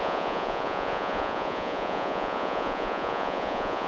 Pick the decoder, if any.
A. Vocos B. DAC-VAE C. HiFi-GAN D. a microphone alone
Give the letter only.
A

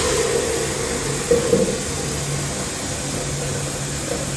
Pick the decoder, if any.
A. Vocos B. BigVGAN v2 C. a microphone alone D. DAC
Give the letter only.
C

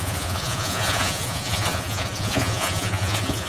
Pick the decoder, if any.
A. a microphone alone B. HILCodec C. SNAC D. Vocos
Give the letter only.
D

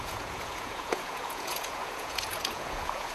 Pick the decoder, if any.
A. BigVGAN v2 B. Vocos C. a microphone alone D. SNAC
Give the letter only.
B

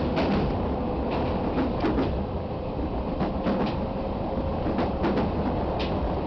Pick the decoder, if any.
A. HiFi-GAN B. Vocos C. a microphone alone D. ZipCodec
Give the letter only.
C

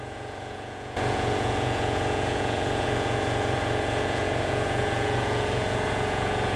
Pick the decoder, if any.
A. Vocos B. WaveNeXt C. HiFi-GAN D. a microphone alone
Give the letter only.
A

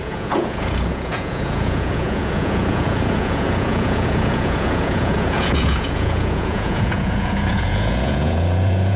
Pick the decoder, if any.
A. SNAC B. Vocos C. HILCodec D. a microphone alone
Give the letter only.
B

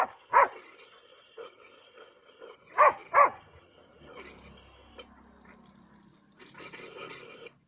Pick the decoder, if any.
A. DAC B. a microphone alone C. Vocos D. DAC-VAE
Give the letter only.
B